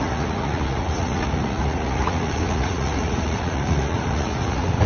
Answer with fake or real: fake